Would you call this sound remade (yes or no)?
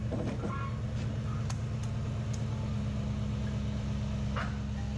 no